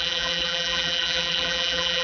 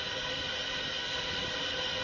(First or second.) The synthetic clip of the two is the first